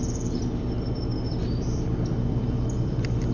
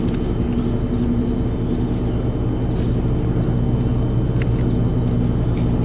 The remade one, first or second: first